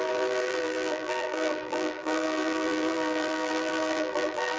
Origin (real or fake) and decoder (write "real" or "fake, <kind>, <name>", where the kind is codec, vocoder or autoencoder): fake, vocoder, BigVGAN v2